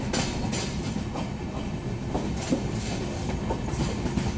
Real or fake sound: real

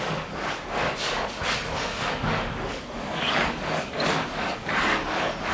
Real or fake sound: fake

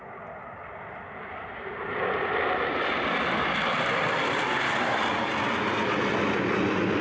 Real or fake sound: real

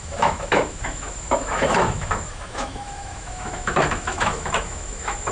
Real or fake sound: fake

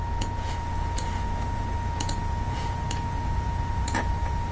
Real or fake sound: fake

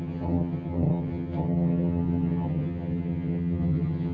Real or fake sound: fake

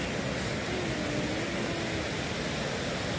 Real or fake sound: real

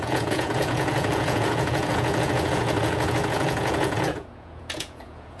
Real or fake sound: fake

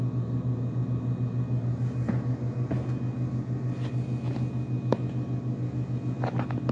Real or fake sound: real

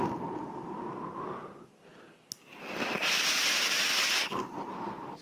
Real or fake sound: real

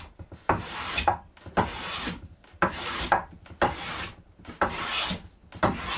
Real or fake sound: real